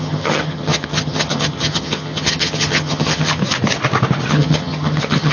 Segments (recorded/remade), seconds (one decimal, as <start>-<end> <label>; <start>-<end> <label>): 0.0-3.4 remade; 3.4-4.3 recorded; 4.3-5.3 remade